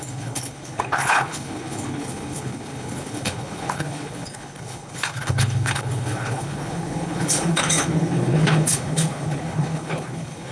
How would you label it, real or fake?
fake